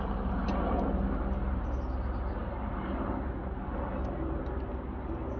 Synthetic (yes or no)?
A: no